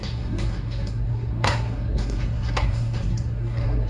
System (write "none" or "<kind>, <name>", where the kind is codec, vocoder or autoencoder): codec, SNAC